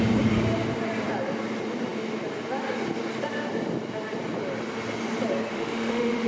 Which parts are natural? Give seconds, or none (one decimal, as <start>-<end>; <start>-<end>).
0.0-5.5